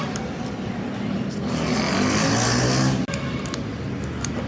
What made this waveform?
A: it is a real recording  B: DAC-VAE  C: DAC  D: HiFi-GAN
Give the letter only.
A